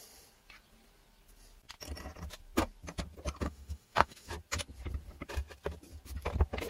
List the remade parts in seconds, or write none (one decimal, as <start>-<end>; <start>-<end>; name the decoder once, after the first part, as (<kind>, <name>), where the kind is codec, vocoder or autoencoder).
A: 3.4-4.3 (autoencoder, DAC-VAE)

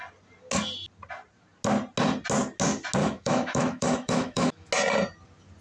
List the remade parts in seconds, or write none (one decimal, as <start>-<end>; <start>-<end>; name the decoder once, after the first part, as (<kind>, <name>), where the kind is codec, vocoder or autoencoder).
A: 3.0-4.7 (autoencoder, DAC-VAE)

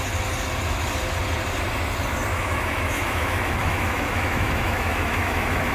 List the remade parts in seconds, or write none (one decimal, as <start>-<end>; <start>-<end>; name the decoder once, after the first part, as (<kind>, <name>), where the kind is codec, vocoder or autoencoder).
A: 2.3-5.7 (autoencoder, DAC-VAE)

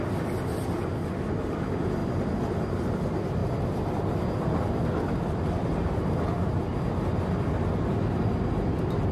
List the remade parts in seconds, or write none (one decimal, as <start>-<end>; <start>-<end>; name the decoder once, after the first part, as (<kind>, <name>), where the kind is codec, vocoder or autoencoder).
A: none

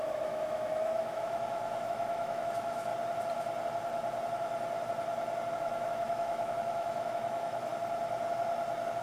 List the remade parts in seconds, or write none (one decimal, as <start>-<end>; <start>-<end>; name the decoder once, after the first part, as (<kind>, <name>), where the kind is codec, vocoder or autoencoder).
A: 0.0-2.9 (autoencoder, DAC-VAE); 5.5-7.7